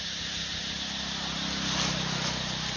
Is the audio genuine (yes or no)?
yes